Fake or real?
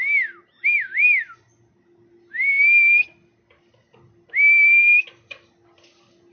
real